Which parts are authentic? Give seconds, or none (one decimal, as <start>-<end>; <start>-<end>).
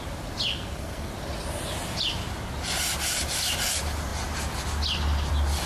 0.0-0.5; 1.1-5.7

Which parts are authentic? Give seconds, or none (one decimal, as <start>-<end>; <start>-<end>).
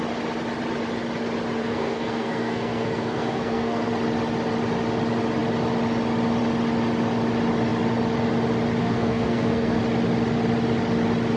0.0-1.6; 3.9-8.8; 9.8-11.4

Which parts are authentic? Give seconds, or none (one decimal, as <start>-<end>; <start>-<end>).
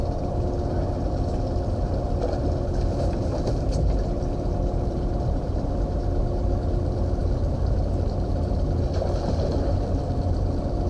0.0-10.9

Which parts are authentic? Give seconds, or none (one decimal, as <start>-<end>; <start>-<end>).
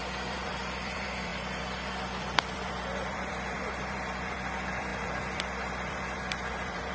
none